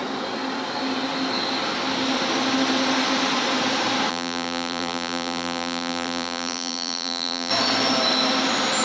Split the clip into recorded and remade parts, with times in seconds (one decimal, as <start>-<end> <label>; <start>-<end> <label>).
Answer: 0.0-4.1 recorded; 4.1-7.5 remade; 7.5-8.8 recorded